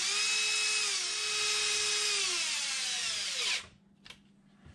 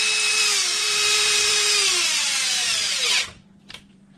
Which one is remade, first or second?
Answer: second